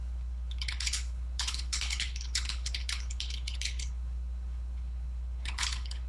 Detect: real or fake fake